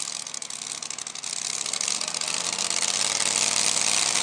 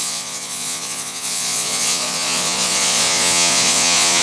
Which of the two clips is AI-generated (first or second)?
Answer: second